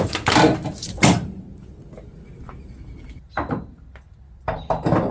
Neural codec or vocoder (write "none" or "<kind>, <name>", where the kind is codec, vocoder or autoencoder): none